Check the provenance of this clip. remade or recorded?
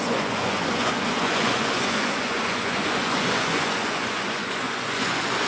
remade